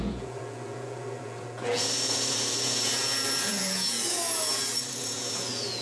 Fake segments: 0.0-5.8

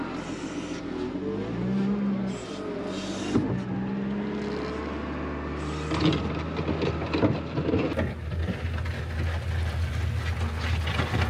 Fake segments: none

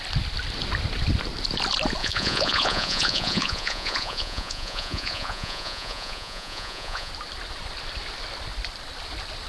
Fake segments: 2.0-7.1

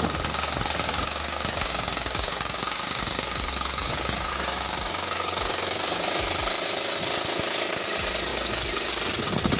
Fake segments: 0.9-6.1; 8.3-9.0

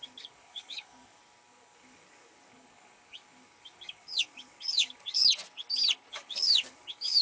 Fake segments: 0.0-5.2; 6.1-7.2

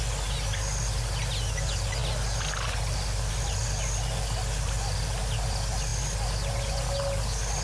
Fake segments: none

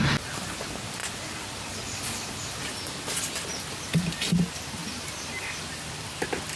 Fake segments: none